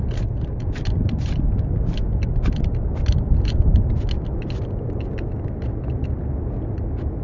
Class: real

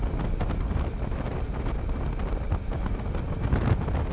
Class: real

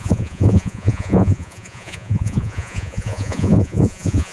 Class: fake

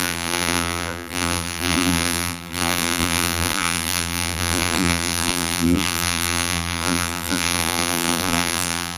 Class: fake